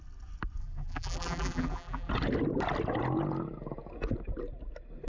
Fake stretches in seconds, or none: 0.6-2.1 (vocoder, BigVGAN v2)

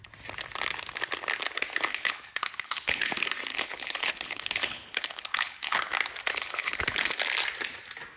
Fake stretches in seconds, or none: 1.9-3.1 (codec, HILCodec); 3.5-5.8; 6.3-7.2

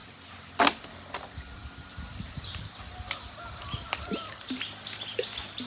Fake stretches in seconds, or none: 0.0-5.7 (vocoder, BigVGAN v2)

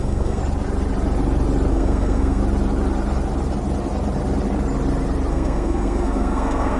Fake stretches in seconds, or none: 0.0-0.4 (codec, SNAC); 1.7-2.4; 5.3-6.8

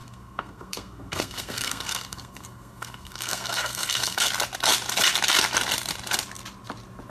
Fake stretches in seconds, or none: 0.0-4.3 (codec, SNAC)